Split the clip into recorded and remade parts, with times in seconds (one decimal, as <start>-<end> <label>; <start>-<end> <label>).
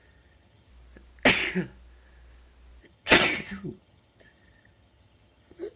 0.0-0.7 remade; 0.7-2.8 recorded; 2.8-5.8 remade